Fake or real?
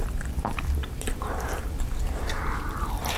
fake